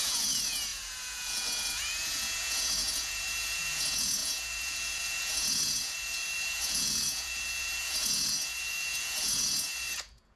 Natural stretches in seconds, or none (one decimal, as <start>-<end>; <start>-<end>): none